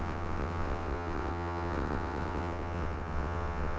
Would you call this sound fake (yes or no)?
yes